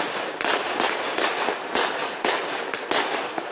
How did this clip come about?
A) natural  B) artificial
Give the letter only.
A